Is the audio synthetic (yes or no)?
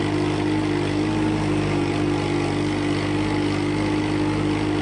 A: no